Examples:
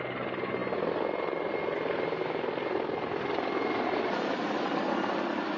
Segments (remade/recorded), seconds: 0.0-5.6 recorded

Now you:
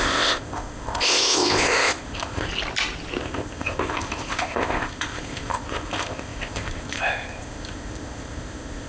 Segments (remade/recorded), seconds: 0.0-2.5 remade; 2.5-3.2 recorded; 3.2-8.9 remade

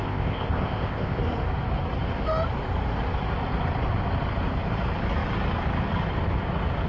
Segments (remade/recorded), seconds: 0.0-1.2 remade; 1.2-6.9 recorded

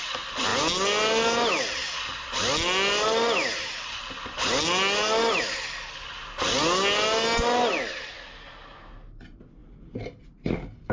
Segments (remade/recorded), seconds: 0.0-10.9 recorded

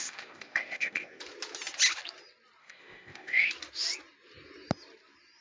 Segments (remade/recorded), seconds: 0.0-1.2 remade; 1.2-2.6 recorded; 2.6-3.5 remade; 3.5-5.4 recorded

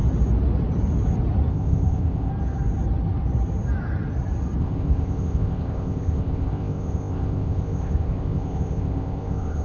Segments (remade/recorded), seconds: 0.0-1.5 recorded; 1.5-2.3 remade; 2.3-4.6 recorded; 4.6-9.6 remade

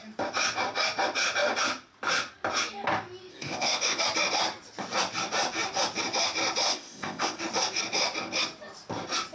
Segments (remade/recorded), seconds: 0.0-3.3 recorded; 3.3-4.0 remade; 4.0-6.7 recorded; 6.7-7.4 remade; 7.4-9.3 recorded